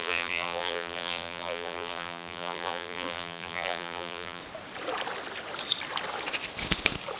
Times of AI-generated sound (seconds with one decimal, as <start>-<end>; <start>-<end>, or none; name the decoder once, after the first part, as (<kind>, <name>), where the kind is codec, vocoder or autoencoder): 0.0-4.4 (vocoder, BigVGAN v2)